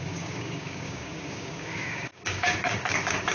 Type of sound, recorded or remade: remade